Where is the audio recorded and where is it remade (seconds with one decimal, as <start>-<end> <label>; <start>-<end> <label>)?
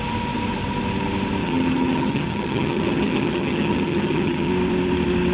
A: 0.0-1.4 recorded; 1.4-4.5 remade; 4.5-5.3 recorded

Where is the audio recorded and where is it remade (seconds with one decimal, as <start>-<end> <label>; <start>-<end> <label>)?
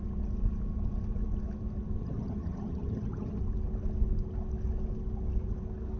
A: 0.0-2.0 recorded; 2.0-3.4 remade; 3.4-6.0 recorded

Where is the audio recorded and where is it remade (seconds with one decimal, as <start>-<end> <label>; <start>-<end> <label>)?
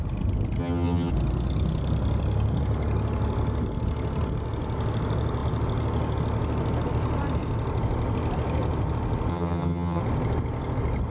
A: 0.0-0.6 recorded; 0.6-1.1 remade; 1.1-9.3 recorded; 9.3-10.0 remade; 10.0-11.1 recorded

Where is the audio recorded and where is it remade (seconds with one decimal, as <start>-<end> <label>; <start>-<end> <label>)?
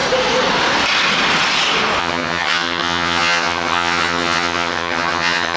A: 0.0-2.0 recorded; 2.0-5.6 remade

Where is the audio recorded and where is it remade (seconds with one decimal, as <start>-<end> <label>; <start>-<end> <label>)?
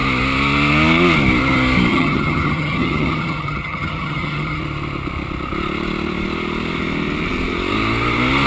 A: 0.0-1.9 recorded; 1.9-4.6 remade; 4.6-8.5 recorded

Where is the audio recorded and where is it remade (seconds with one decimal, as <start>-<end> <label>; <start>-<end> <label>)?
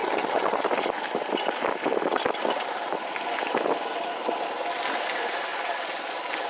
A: 0.0-0.6 remade; 0.6-6.5 recorded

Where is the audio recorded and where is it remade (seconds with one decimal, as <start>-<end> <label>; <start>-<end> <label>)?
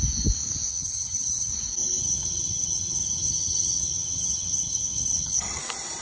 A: 0.0-0.7 recorded; 0.7-1.5 remade; 1.5-2.0 recorded; 2.0-5.6 remade; 5.6-6.0 recorded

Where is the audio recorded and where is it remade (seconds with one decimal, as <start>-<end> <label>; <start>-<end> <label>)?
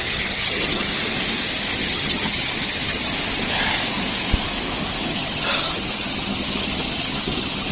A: 0.0-0.9 remade; 0.9-1.8 recorded; 1.8-3.1 remade; 3.1-5.0 recorded; 5.0-7.7 remade